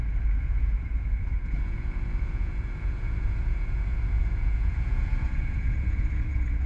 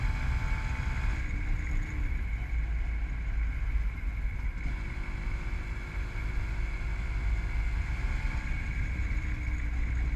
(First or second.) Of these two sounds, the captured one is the second